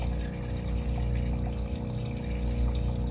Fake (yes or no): no